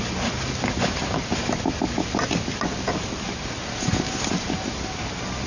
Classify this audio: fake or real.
real